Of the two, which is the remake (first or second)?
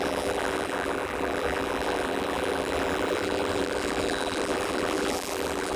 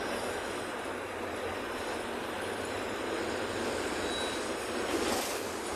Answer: first